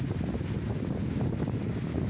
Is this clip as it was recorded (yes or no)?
yes